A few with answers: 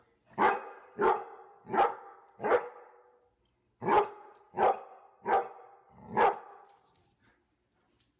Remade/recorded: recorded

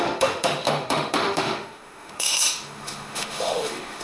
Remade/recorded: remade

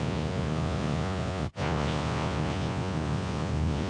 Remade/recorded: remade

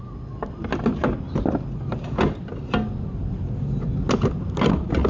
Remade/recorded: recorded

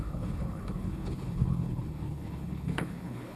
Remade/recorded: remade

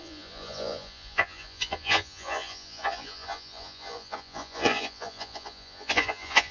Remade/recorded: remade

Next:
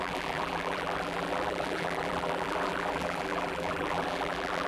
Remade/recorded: remade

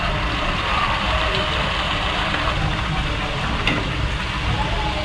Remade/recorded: remade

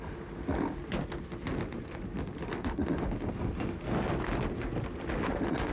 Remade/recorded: recorded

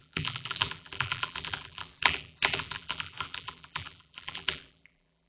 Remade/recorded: remade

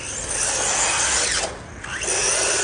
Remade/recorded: recorded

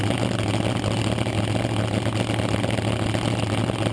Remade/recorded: recorded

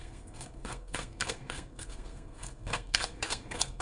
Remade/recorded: remade